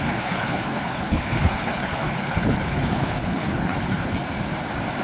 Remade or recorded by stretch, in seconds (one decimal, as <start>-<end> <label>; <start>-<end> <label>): 0.0-4.2 remade; 4.2-5.0 recorded